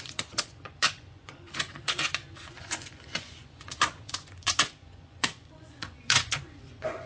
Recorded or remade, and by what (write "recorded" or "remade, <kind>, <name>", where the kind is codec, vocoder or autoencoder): remade, vocoder, Vocos